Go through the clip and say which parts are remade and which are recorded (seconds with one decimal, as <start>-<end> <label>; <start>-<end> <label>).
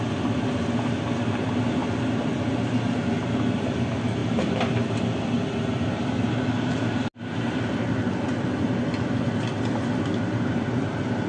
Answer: 0.0-4.2 recorded; 4.2-5.0 remade; 5.0-11.3 recorded